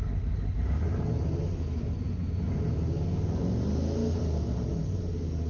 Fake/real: real